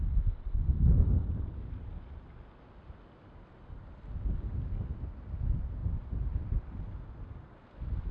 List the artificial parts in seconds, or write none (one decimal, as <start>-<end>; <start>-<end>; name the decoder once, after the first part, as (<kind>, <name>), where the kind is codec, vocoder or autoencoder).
none